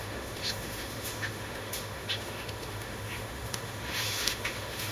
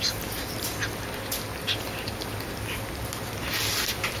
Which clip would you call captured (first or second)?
second